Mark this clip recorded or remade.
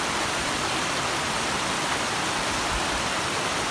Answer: recorded